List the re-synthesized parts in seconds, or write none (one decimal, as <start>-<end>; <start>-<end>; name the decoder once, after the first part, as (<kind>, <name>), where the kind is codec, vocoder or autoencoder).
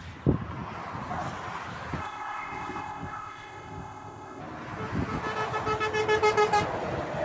2.0-4.4 (codec, ZipCodec)